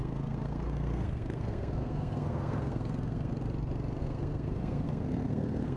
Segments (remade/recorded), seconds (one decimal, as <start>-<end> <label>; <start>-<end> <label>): 0.0-3.3 remade; 3.3-4.0 recorded; 4.0-5.8 remade